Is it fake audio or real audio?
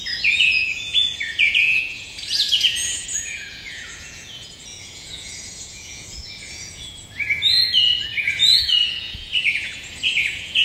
fake